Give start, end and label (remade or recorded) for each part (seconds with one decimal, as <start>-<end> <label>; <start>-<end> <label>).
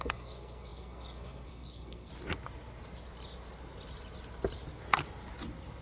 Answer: 0.0-2.1 remade; 2.1-5.8 recorded